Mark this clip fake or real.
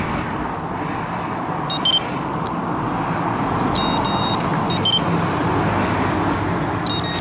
real